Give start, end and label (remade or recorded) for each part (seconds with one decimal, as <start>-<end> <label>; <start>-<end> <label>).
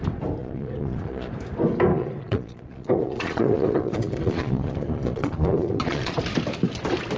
0.0-0.4 recorded; 0.4-1.3 remade; 1.3-1.9 recorded; 1.9-6.2 remade; 6.2-7.2 recorded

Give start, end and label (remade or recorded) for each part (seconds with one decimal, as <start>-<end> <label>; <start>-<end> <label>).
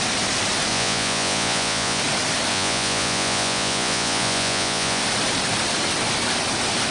0.0-0.7 recorded; 0.7-2.0 remade; 2.0-2.5 recorded; 2.5-5.0 remade; 5.0-6.9 recorded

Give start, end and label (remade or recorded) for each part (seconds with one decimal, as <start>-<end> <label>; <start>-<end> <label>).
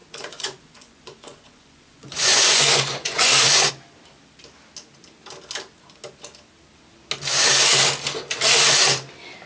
0.0-3.7 remade; 3.7-9.5 recorded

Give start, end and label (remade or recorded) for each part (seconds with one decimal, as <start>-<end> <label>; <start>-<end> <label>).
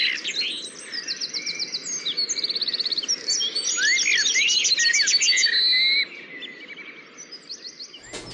0.0-8.3 recorded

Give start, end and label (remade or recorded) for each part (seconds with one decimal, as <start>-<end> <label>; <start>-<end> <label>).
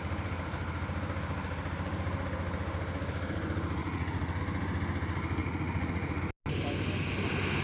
0.0-3.8 recorded; 3.8-4.4 remade; 4.4-5.4 recorded; 5.4-6.2 remade; 6.2-7.6 recorded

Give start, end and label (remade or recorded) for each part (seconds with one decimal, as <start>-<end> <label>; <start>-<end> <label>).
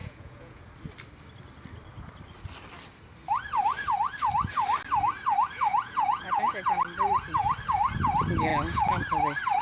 0.0-0.6 remade; 0.6-5.7 recorded; 5.7-6.8 remade; 6.8-9.6 recorded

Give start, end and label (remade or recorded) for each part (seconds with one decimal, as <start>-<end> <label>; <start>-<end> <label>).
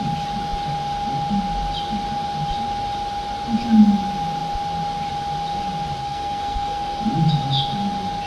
0.0-6.0 recorded; 6.0-7.0 remade; 7.0-8.3 recorded